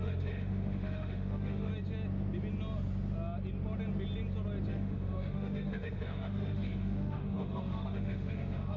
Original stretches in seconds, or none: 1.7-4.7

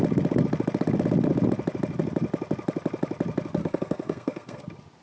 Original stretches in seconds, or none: 0.0-3.6; 4.6-5.0

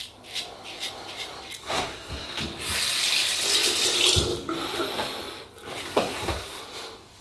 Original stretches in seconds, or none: 0.0-1.6; 2.4-5.8; 6.6-7.2

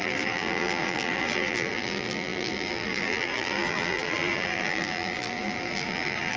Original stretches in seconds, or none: none

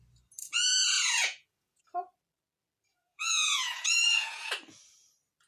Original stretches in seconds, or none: 0.0-0.4; 1.8-2.9; 4.5-5.5